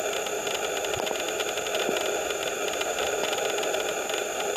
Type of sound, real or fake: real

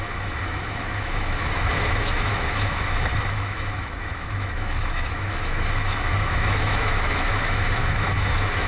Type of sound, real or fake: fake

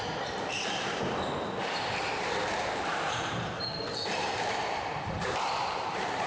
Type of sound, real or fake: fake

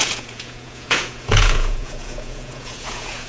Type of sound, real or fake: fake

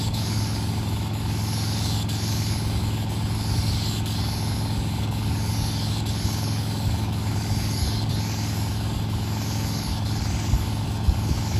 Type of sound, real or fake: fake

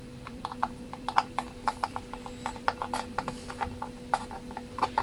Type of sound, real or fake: fake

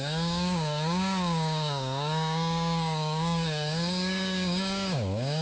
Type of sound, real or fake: fake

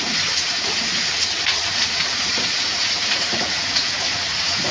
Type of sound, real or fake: fake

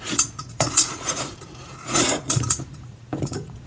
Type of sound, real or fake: fake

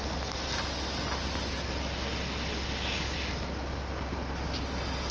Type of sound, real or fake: real